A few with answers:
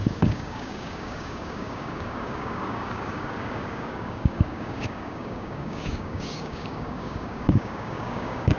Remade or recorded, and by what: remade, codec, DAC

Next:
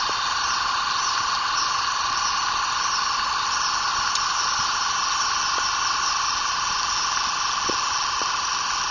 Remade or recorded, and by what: recorded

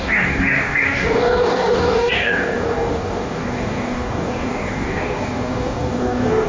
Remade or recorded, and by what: remade, codec, DAC